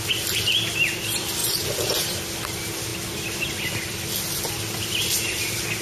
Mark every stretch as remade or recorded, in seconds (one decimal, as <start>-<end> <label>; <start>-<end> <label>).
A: 0.0-1.4 recorded; 1.4-2.2 remade; 2.2-5.8 recorded